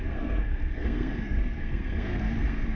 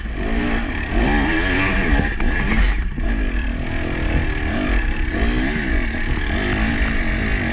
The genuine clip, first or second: second